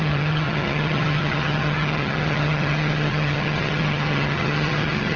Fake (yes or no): yes